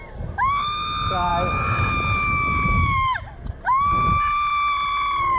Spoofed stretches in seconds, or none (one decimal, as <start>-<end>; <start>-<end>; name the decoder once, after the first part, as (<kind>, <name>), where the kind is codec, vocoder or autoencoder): none